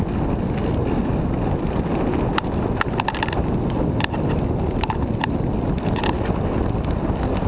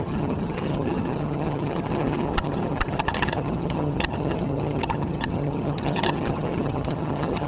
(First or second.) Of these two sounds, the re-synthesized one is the second